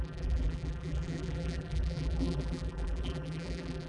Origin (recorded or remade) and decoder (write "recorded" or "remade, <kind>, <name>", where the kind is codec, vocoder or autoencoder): remade, vocoder, BigVGAN v2